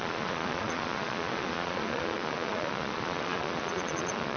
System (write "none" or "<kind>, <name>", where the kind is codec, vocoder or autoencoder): vocoder, Vocos